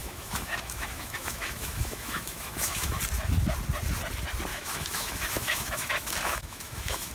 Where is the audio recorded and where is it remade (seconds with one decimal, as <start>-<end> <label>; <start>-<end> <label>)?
0.0-3.0 remade; 3.0-4.5 recorded; 4.5-7.1 remade